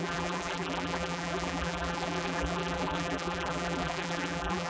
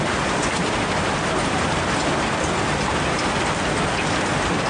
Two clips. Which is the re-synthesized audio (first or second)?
first